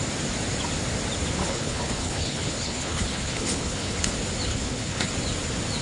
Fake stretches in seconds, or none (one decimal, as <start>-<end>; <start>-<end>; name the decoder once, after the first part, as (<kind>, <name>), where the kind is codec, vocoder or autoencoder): 1.4-4.1 (codec, HILCodec); 4.5-5.1